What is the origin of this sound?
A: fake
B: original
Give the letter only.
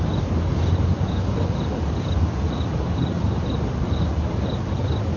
B